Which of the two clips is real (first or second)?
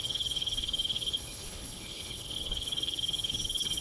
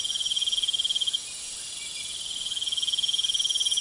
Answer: second